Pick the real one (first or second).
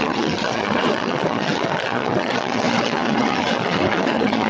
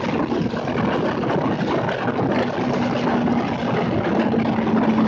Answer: second